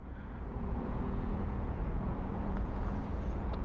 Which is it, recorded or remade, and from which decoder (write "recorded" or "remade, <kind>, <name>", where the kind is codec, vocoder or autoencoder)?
remade, vocoder, Vocos